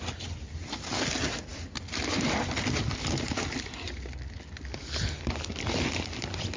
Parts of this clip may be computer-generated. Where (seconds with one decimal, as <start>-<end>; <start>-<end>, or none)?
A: none